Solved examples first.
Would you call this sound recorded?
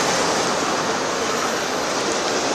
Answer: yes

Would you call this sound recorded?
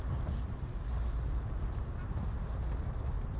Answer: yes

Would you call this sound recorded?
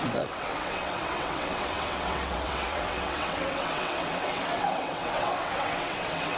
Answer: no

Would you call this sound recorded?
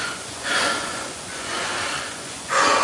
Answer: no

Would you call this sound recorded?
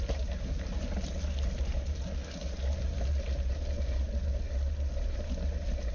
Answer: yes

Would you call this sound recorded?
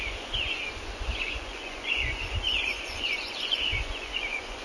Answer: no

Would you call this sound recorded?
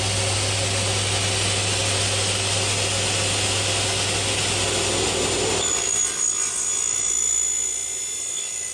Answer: yes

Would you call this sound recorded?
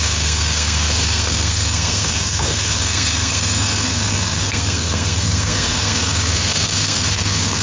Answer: no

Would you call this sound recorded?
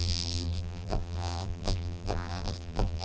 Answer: no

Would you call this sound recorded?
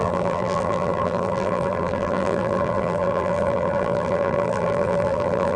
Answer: no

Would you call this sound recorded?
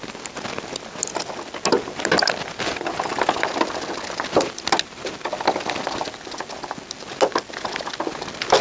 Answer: yes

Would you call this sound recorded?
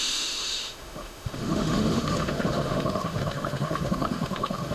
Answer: no